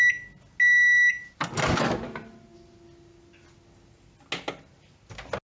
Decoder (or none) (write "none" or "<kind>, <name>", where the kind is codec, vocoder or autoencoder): none